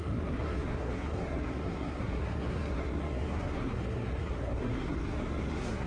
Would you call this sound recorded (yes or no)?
no